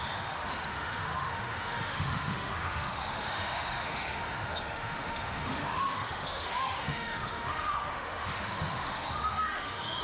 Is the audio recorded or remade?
remade